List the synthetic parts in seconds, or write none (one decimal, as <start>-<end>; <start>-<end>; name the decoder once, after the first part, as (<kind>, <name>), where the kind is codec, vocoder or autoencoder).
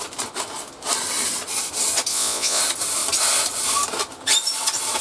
2.1-2.6 (vocoder, Vocos)